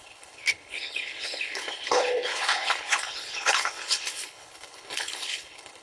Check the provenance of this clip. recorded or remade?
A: remade